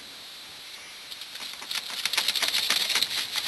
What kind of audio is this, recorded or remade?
recorded